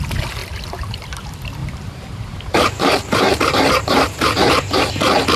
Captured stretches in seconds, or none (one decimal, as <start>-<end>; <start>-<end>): 0.0-1.6; 4.8-5.4